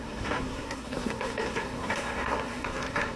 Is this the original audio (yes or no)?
no